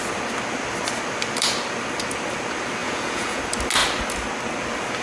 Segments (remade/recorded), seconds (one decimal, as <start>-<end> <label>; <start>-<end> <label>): 0.0-2.8 recorded; 2.8-3.4 remade; 3.4-5.0 recorded